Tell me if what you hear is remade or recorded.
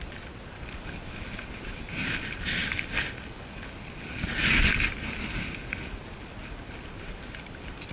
recorded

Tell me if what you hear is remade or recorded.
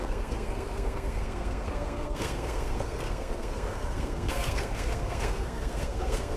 remade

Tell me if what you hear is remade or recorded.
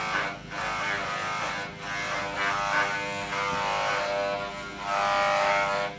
recorded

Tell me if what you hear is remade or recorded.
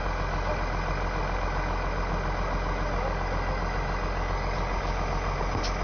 recorded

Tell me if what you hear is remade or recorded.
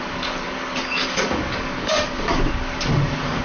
remade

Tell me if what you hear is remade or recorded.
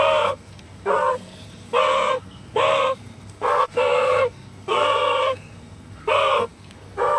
remade